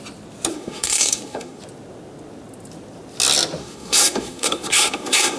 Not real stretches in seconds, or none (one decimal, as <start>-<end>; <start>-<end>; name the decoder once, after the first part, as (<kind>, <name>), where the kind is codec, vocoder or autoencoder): 0.5-1.6 (codec, SNAC); 3.6-5.4